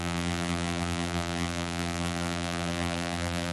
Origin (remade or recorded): remade